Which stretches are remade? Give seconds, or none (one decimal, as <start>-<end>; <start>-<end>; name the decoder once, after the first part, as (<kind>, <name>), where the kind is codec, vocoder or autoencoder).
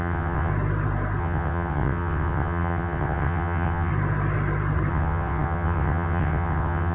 0.0-0.5 (vocoder, WaveNeXt); 1.2-3.9; 4.9-6.9